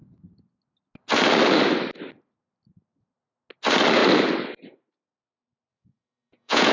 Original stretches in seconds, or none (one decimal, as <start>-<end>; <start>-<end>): 0.0-5.7